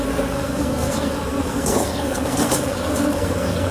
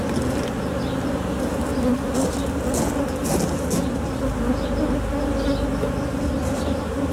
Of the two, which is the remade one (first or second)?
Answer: first